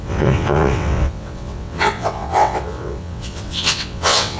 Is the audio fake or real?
fake